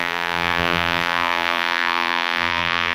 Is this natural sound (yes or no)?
no